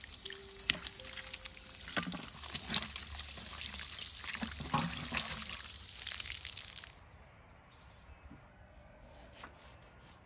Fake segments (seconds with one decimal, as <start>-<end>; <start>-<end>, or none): 8.5-9.4